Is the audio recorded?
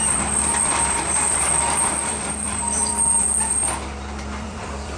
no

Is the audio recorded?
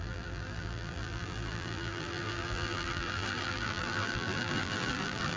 no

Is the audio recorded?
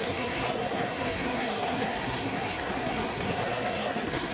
no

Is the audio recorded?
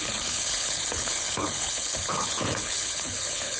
no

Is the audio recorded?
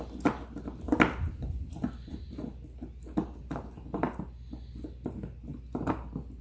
yes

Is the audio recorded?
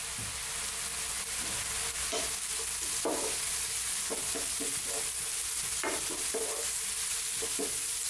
yes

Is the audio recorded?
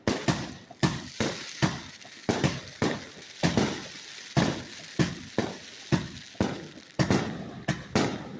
no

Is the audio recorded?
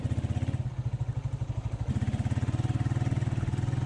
yes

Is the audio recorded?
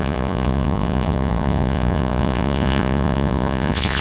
no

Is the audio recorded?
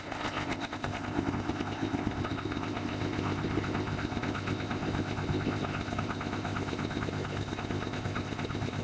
no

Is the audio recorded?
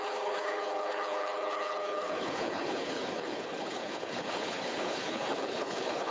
no